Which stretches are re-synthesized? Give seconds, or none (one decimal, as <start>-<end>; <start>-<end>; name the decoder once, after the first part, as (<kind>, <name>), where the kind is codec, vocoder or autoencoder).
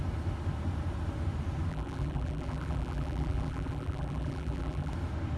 1.7-4.9 (vocoder, BigVGAN v2)